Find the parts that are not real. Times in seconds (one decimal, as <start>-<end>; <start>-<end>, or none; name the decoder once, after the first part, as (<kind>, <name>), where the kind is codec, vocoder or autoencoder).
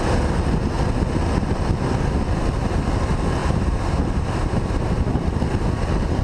3.4-5.4 (vocoder, BigVGAN v2)